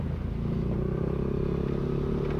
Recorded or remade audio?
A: recorded